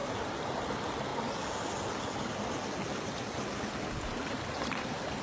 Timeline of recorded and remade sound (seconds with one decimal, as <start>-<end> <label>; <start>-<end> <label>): 0.0-1.1 remade; 1.1-4.2 recorded; 4.2-5.2 remade